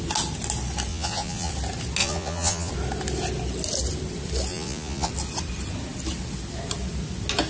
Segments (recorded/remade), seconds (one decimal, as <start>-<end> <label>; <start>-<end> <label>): 0.0-0.9 recorded; 0.9-1.5 remade; 1.5-2.0 recorded; 2.0-2.7 remade; 2.7-4.5 recorded; 4.5-5.1 remade; 5.1-7.5 recorded